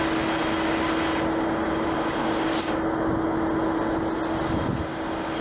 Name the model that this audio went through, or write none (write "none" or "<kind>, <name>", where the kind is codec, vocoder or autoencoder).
none